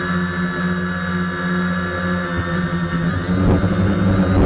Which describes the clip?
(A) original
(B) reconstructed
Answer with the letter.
A